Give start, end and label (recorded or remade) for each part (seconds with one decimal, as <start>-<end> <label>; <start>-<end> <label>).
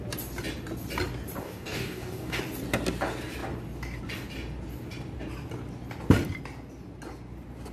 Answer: 0.0-1.4 recorded; 1.4-2.4 remade; 2.4-7.7 recorded